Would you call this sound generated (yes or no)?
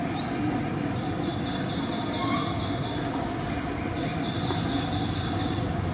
no